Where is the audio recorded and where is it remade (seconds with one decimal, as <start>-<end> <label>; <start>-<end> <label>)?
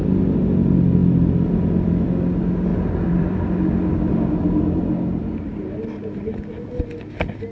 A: 0.0-2.7 recorded; 2.7-4.1 remade; 4.1-7.5 recorded